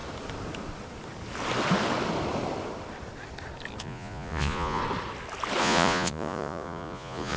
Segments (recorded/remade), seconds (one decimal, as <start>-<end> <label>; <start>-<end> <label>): 0.0-3.8 recorded; 3.8-4.8 remade; 4.8-5.6 recorded; 5.6-7.4 remade